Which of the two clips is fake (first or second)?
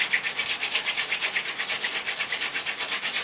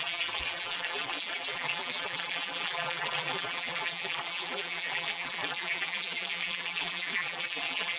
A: second